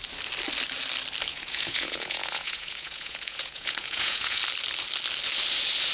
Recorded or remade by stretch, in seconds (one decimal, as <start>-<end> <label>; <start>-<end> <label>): 0.0-1.3 recorded; 1.3-4.4 remade; 4.4-5.9 recorded